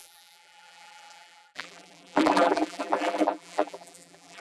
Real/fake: fake